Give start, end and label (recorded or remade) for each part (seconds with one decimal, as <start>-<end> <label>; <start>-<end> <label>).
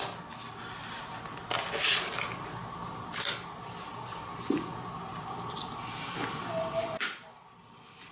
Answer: 0.0-8.1 recorded